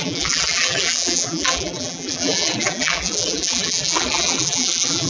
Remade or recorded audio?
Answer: remade